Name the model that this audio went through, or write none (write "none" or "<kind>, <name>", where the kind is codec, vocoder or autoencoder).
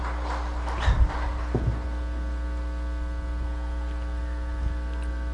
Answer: none